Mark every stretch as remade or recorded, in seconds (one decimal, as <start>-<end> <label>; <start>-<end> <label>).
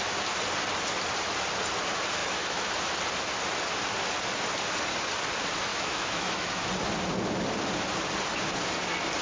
0.0-2.2 recorded; 2.2-2.7 remade; 2.7-5.7 recorded; 5.7-6.7 remade; 6.7-9.2 recorded